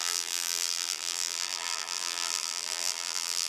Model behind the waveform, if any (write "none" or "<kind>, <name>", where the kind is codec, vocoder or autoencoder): vocoder, BigVGAN v2